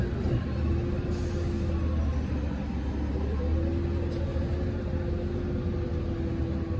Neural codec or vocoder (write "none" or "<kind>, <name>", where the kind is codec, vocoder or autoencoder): none